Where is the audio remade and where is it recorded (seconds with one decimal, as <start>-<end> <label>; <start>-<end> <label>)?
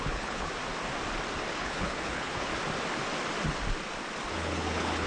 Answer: 0.0-0.5 remade; 0.5-1.5 recorded; 1.5-2.5 remade; 2.5-4.3 recorded; 4.3-5.1 remade